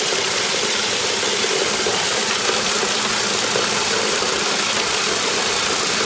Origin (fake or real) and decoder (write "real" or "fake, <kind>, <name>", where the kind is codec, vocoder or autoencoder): real